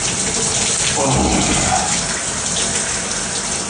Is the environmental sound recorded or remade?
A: recorded